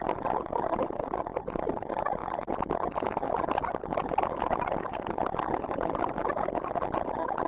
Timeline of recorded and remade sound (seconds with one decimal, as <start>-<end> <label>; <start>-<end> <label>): 0.0-7.5 recorded

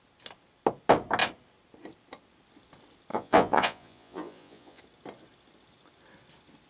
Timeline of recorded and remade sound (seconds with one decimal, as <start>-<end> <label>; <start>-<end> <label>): 0.0-3.1 recorded; 3.1-4.8 remade; 4.8-6.7 recorded

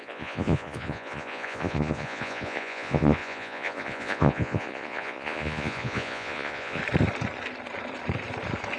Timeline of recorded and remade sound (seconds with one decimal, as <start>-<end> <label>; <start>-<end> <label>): 0.0-6.8 remade; 6.8-8.8 recorded

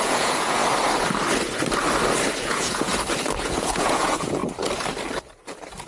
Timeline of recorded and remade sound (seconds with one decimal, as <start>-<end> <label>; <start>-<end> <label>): 0.0-0.6 remade; 0.6-2.4 recorded; 2.4-2.9 remade; 2.9-3.4 recorded; 3.4-4.4 remade; 4.4-5.9 recorded

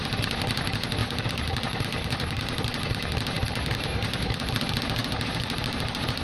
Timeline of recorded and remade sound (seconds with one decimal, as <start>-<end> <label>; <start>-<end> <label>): 0.0-1.0 recorded; 1.0-4.5 remade; 4.5-5.0 recorded; 5.0-6.2 remade